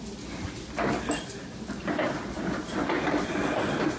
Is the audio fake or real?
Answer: real